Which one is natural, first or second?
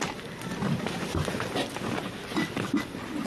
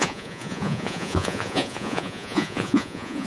first